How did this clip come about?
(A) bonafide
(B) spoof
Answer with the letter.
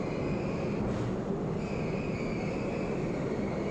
A